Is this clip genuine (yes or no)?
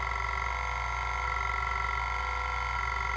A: yes